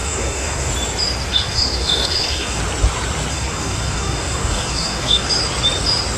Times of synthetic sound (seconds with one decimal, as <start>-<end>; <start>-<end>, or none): 0.0-0.7; 1.3-2.6; 3.3-5.3

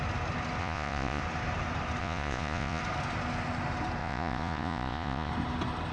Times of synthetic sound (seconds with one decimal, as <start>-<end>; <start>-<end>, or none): 0.6-1.2; 2.0-2.8; 4.0-5.3

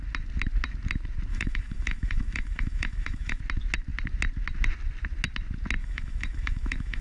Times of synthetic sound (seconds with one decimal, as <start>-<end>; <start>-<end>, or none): 1.3-3.4; 5.8-7.0

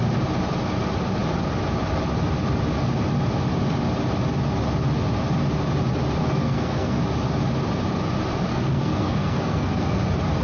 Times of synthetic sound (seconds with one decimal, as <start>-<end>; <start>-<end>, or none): 6.2-7.0; 8.5-10.0

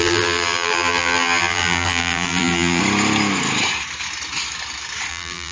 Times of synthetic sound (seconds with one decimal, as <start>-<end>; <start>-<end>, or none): 0.0-2.8; 5.1-5.5

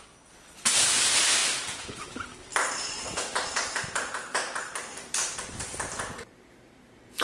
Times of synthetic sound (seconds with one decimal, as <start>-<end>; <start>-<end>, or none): 2.5-6.0

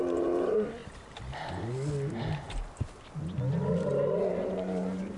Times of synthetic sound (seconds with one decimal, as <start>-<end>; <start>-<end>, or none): none

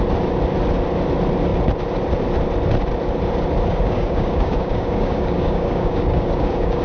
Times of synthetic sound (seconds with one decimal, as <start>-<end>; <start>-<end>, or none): 3.7-6.8